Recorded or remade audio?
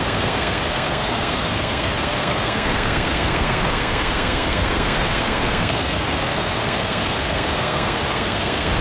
remade